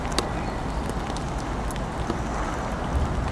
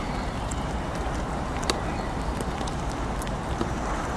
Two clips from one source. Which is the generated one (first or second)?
second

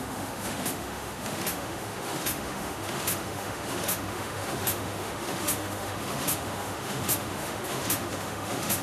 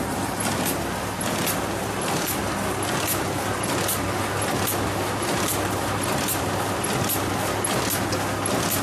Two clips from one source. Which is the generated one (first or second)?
first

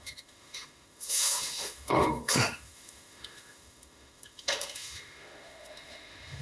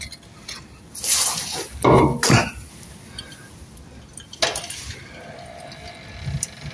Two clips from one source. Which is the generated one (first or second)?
first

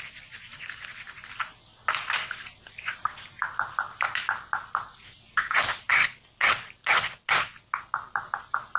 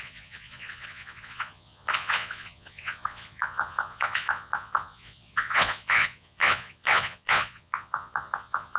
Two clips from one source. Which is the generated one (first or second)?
second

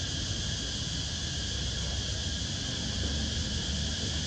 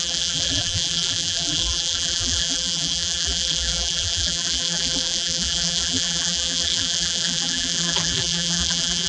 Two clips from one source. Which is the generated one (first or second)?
second